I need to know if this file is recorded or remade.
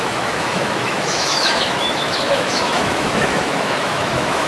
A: remade